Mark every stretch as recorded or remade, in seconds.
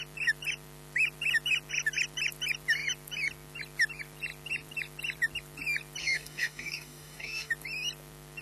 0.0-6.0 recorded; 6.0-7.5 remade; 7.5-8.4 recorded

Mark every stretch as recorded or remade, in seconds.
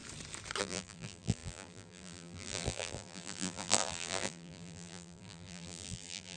0.0-0.6 recorded; 0.6-6.4 remade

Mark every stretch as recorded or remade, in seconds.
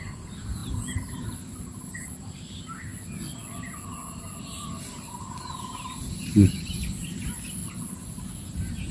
0.0-2.9 remade; 2.9-4.8 recorded; 4.8-7.6 remade; 7.6-8.5 recorded; 8.5-8.9 remade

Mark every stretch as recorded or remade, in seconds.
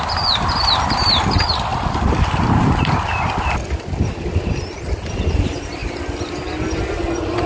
0.0-7.5 recorded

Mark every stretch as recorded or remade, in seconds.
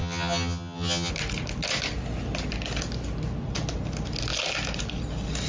0.0-1.1 remade; 1.1-5.5 recorded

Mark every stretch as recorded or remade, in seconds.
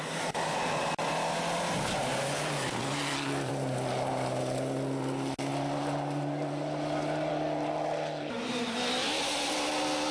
0.0-10.1 recorded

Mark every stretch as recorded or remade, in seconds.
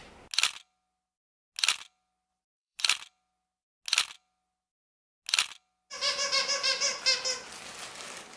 0.0-2.3 recorded; 2.3-2.8 remade; 2.8-8.4 recorded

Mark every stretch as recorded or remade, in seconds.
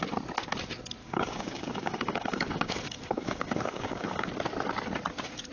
0.0-1.0 recorded; 1.0-4.3 remade; 4.3-5.5 recorded